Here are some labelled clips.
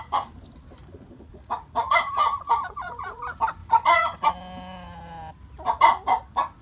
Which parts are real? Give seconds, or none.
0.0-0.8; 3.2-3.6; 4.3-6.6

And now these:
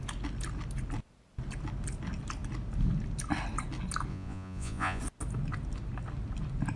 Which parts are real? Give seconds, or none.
0.0-4.1; 5.0-6.8

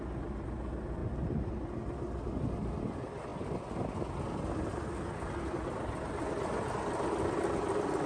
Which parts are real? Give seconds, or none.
0.0-8.1